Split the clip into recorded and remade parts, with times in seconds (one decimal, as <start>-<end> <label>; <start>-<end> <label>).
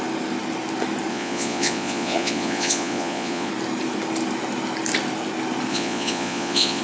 0.0-1.1 recorded; 1.1-3.5 remade; 3.5-5.7 recorded; 5.7-6.8 remade